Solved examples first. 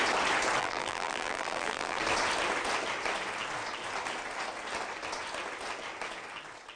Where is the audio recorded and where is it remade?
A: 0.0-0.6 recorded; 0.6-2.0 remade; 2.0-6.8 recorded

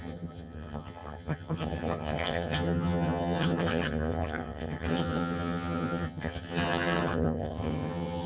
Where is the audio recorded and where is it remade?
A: 0.0-8.3 remade

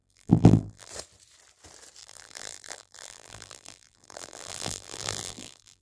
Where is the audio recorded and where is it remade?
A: 0.0-0.9 remade; 0.9-2.0 recorded; 2.0-5.8 remade